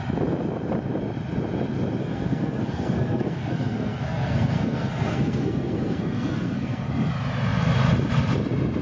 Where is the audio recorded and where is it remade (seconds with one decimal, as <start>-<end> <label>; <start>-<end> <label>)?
0.0-2.0 recorded; 2.0-6.9 remade; 6.9-8.8 recorded